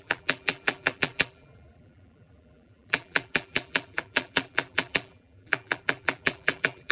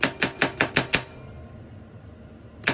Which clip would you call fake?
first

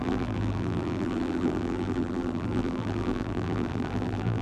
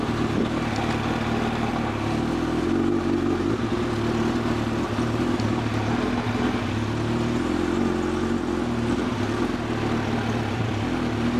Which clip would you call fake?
first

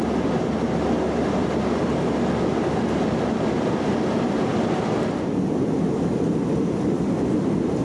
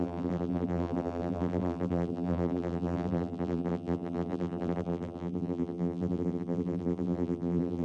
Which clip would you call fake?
second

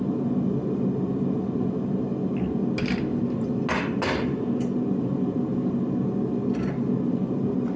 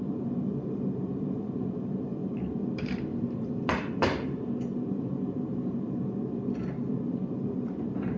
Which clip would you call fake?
second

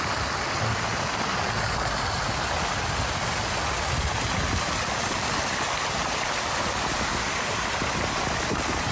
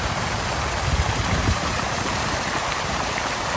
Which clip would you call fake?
second